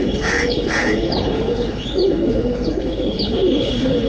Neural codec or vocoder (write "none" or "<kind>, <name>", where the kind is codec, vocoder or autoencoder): codec, HILCodec